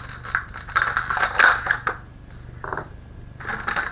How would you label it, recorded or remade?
recorded